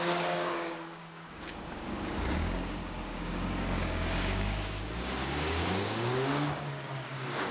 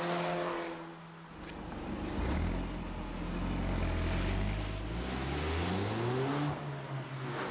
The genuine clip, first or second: second